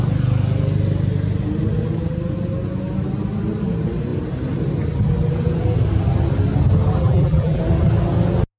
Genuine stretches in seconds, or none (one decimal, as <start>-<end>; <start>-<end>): 0.0-7.0; 7.6-8.6